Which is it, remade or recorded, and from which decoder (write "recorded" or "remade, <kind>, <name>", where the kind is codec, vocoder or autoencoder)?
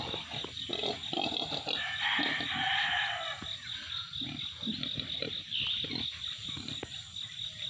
recorded